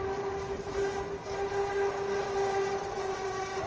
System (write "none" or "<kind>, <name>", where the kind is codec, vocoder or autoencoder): none